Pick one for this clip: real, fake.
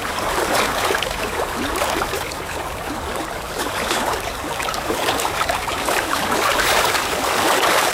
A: fake